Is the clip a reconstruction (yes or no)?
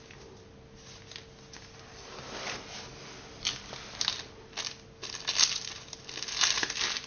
no